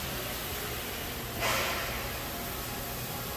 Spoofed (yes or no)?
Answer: no